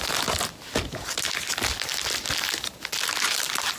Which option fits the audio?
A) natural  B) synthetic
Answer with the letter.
A